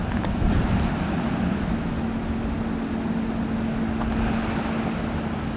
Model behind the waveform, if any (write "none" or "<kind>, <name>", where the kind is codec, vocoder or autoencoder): none